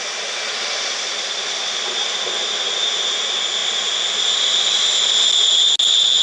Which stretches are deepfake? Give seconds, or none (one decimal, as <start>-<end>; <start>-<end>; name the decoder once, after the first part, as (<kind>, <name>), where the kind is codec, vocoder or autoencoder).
none